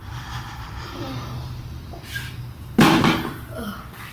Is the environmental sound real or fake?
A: real